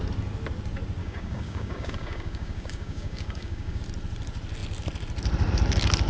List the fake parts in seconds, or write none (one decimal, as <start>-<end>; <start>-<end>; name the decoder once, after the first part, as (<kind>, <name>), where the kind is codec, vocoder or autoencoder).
1.0-3.8 (codec, DAC)